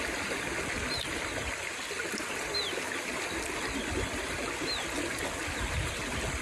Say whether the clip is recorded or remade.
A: recorded